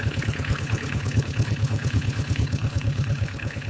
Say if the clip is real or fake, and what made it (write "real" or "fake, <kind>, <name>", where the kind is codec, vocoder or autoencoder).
fake, codec, HILCodec